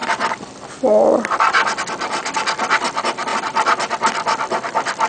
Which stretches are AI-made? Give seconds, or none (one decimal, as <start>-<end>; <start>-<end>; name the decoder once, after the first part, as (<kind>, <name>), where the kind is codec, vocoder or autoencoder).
3.3-5.1 (vocoder, BigVGAN v2)